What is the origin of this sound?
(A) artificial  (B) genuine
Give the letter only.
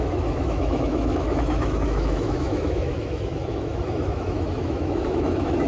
A